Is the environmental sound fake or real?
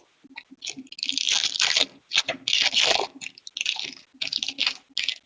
real